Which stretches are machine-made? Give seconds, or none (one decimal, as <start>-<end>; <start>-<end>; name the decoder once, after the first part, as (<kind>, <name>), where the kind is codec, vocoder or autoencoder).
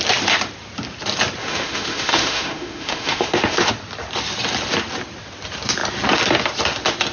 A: 1.4-3.7 (autoencoder, DAC-VAE)